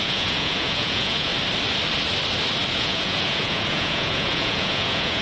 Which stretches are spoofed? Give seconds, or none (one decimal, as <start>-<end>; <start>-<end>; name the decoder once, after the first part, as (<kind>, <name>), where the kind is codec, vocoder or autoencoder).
0.0-1.3 (vocoder, Vocos); 2.7-5.2